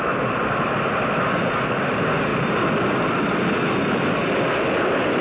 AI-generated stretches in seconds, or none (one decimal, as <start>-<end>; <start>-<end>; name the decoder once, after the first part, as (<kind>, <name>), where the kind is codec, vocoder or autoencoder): none